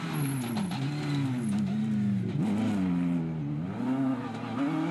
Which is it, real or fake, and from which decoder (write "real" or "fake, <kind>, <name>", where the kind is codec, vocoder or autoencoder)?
real